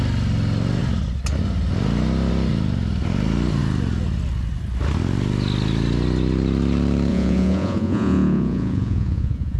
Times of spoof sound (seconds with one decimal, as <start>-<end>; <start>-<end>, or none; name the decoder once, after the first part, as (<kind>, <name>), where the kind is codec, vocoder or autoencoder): 7.1-9.6 (vocoder, Vocos)